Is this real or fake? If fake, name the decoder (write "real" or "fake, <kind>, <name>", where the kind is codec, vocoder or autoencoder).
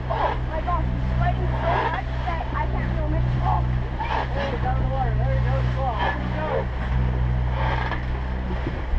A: real